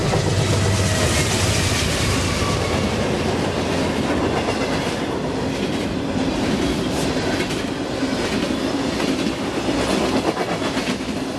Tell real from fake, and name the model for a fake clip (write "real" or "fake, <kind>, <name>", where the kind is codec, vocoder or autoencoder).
real